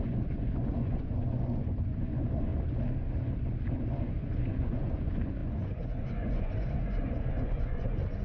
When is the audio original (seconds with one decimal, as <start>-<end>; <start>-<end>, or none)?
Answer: 2.5-3.7